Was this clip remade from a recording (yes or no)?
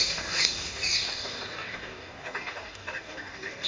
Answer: yes